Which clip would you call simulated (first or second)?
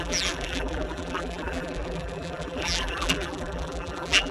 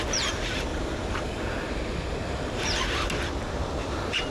first